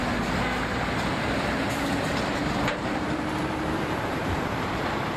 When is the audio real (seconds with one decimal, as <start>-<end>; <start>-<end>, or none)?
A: 0.0-1.1